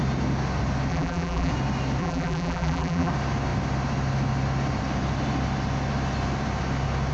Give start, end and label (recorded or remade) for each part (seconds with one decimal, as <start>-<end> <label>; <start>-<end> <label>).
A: 0.0-0.9 recorded; 0.9-1.5 remade; 1.5-2.0 recorded; 2.0-3.1 remade; 3.1-7.1 recorded